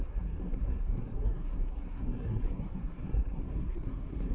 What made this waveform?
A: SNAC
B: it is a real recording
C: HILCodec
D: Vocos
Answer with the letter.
A